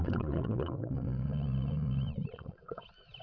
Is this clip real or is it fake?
fake